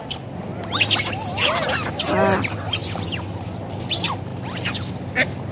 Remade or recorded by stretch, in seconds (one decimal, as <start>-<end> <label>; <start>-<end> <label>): 0.0-5.5 recorded